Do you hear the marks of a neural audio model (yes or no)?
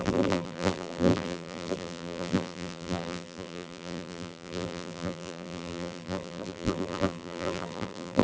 yes